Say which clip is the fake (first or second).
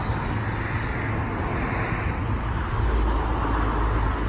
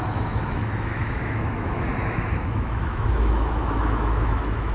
second